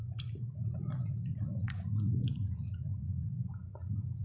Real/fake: fake